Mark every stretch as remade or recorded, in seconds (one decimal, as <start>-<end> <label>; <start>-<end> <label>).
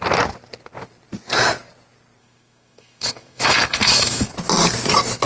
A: 0.0-2.2 recorded; 2.2-4.3 remade; 4.3-5.3 recorded